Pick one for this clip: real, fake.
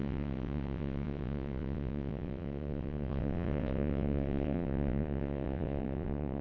fake